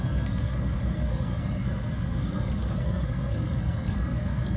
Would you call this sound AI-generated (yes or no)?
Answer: yes